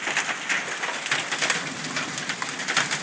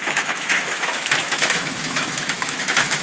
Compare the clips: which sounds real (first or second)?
first